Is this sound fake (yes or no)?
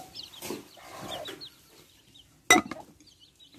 no